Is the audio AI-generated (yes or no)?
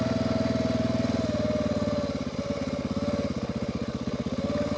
no